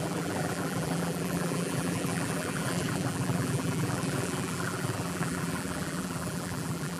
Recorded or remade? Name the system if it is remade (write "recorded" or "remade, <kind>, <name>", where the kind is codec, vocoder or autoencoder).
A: remade, vocoder, BigVGAN v2